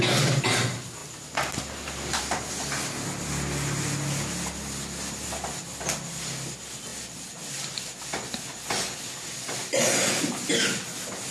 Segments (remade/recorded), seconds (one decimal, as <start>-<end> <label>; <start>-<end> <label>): 0.0-11.3 recorded